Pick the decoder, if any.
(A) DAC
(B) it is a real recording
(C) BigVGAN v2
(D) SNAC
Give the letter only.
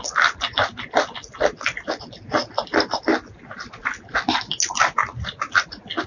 B